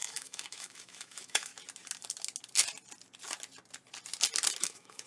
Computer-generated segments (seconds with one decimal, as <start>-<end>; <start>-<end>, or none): 0.0-1.5; 4.6-5.1